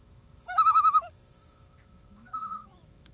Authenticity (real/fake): fake